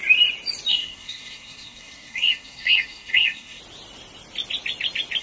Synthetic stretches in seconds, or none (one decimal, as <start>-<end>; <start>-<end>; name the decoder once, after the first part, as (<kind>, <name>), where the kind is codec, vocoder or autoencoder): 0.7-3.6 (codec, SNAC)

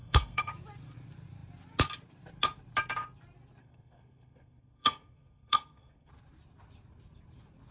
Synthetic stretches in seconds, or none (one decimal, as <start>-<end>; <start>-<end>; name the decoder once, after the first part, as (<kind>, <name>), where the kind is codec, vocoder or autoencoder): 0.0-0.5 (codec, SNAC); 3.6-6.1

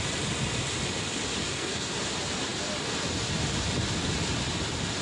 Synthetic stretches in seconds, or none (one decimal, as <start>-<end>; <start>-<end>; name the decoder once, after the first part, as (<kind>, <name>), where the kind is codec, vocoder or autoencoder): 1.4-1.9 (codec, SNAC)

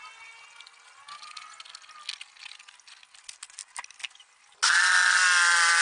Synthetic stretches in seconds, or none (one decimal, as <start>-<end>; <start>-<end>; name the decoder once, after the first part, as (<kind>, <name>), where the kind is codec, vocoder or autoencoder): none

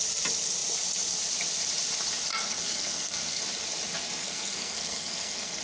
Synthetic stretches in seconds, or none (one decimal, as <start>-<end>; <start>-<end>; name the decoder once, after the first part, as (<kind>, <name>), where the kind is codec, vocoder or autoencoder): 2.3-3.4 (codec, SNAC); 4.2-5.6

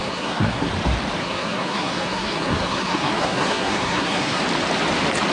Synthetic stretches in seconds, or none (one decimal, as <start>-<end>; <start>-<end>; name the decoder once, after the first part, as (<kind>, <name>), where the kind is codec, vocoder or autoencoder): 0.0-0.7 (codec, SNAC); 1.2-4.4